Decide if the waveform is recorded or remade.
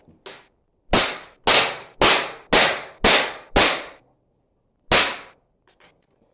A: recorded